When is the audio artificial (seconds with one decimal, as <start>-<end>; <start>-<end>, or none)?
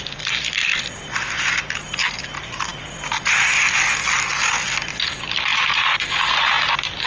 none